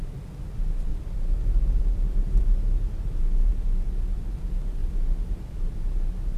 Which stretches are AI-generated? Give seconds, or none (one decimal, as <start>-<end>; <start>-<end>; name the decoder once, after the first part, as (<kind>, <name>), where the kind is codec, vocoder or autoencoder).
0.0-0.9 (vocoder, BigVGAN v2); 1.8-3.5; 4.2-4.8; 5.3-6.4